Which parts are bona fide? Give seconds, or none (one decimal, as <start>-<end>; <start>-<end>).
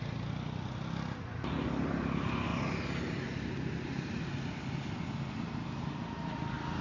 0.0-6.8